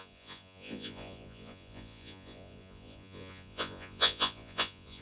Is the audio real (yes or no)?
no